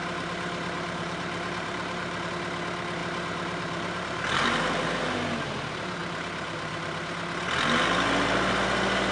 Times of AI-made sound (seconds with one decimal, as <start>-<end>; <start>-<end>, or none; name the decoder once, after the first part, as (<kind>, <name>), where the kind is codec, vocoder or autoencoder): 0.0-2.3 (vocoder, BigVGAN v2); 3.0-4.6; 6.0-7.1